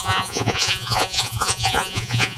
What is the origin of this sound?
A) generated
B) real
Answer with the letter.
A